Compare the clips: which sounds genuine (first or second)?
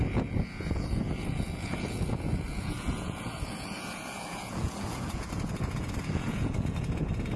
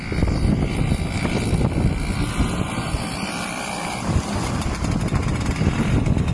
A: second